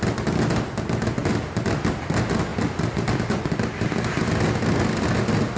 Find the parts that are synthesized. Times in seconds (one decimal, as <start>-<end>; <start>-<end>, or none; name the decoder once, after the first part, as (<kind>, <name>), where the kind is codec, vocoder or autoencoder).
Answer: none